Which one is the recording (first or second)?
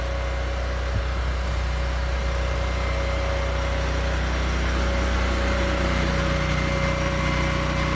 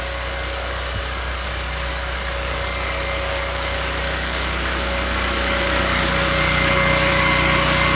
first